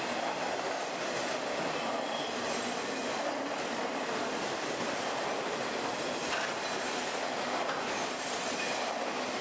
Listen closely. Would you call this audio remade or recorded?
recorded